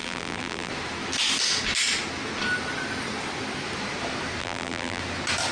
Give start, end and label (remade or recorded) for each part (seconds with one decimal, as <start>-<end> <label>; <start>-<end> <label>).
0.0-0.7 remade; 0.7-4.4 recorded; 4.4-5.0 remade; 5.0-5.5 recorded